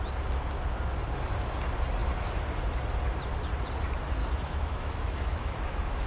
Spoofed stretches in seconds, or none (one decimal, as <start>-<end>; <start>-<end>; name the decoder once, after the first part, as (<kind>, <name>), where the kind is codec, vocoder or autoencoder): 4.2-6.1 (autoencoder, DAC-VAE)